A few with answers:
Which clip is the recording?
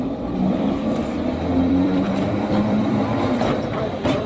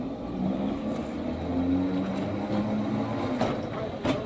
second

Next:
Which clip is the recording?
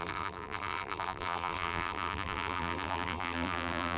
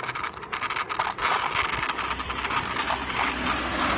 second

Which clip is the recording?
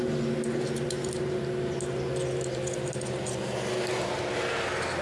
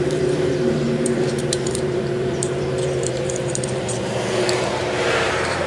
first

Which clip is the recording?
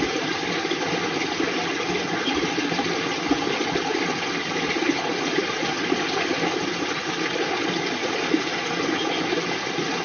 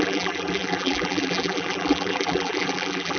first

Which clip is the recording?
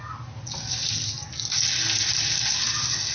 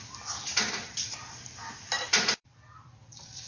first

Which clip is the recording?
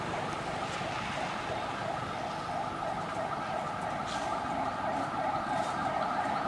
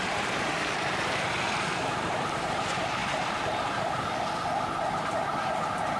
first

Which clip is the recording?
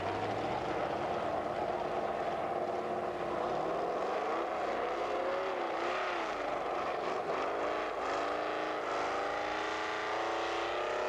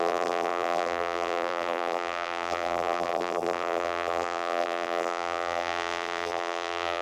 first